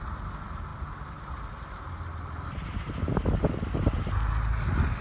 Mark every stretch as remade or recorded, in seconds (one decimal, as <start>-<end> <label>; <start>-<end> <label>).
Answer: 0.0-5.0 recorded